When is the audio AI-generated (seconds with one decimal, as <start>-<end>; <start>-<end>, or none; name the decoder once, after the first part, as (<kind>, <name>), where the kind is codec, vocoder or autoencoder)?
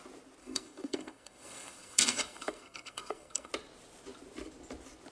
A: 0.4-3.5 (codec, SNAC)